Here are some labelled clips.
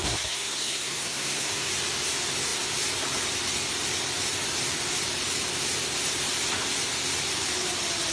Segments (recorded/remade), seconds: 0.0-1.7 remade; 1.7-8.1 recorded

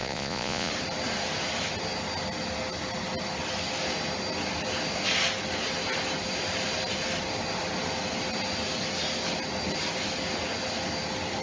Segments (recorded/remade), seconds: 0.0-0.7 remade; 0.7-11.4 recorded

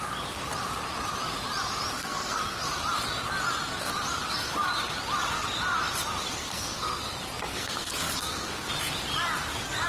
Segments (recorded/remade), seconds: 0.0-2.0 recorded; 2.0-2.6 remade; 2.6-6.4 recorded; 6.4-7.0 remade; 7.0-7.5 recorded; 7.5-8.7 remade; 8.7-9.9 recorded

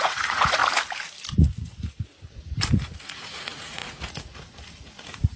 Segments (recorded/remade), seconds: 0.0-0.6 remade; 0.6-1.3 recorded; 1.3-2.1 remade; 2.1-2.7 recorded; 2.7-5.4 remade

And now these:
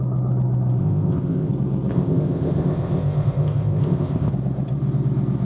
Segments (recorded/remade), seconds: 0.0-0.8 recorded; 0.8-1.5 remade; 1.5-1.9 recorded; 1.9-4.3 remade; 4.3-5.4 recorded

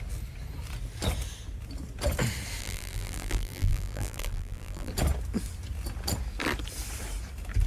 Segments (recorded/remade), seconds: 0.0-2.6 recorded; 2.6-4.9 remade; 4.9-7.7 recorded